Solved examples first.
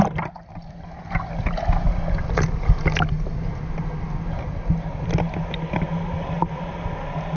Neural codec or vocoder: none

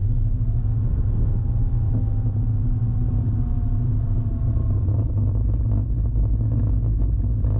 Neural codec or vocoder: none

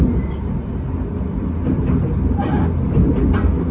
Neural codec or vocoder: vocoder, BigVGAN v2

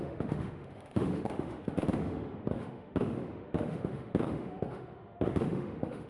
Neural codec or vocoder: autoencoder, DAC-VAE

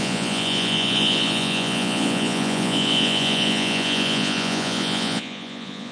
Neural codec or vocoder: vocoder, Vocos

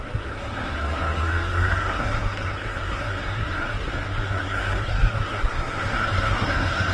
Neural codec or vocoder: codec, SNAC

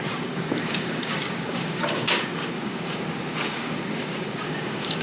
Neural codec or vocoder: codec, DAC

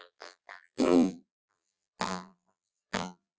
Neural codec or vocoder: vocoder, BigVGAN v2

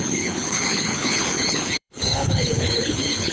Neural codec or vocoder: codec, HILCodec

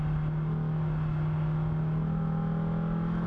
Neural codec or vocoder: none